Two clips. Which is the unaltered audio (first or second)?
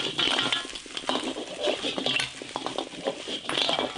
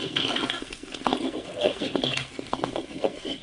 first